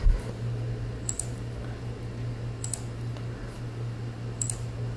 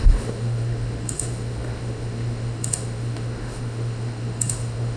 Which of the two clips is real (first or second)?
first